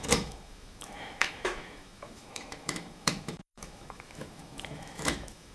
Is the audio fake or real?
fake